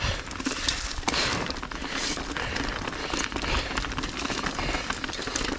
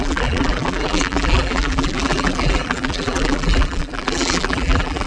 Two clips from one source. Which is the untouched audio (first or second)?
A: first